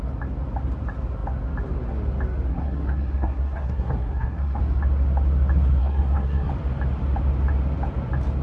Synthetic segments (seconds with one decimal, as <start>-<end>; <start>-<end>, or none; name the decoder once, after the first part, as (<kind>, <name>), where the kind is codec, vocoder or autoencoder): 2.5-4.6 (codec, SNAC); 5.8-6.5